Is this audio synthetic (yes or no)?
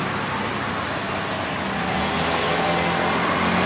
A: no